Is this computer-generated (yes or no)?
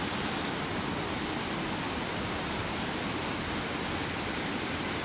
no